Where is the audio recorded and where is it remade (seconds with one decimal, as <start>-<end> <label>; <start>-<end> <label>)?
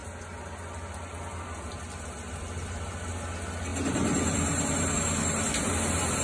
0.0-6.2 recorded